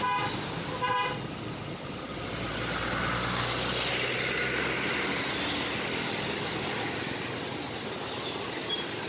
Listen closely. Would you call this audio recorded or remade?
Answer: recorded